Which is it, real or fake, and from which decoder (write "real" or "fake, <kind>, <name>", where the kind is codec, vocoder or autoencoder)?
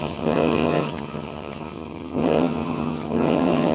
fake, vocoder, HiFi-GAN